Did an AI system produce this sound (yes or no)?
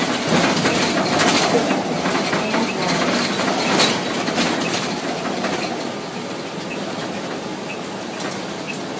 no